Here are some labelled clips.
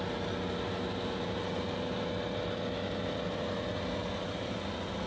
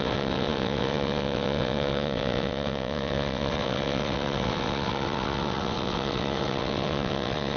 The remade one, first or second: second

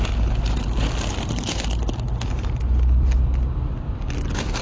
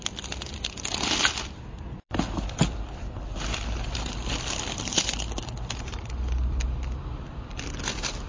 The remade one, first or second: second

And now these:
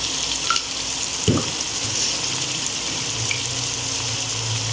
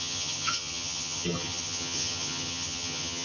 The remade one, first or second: second